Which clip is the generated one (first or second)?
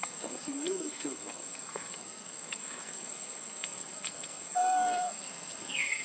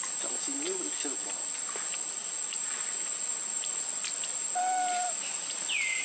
first